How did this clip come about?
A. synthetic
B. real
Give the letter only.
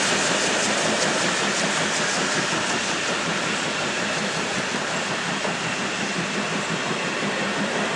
B